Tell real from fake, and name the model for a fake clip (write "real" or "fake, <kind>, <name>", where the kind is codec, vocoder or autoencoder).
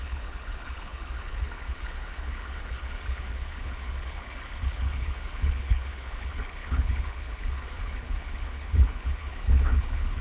fake, codec, HILCodec